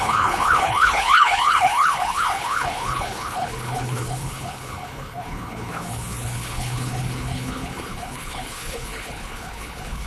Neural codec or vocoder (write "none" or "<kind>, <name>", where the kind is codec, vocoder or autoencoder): codec, HILCodec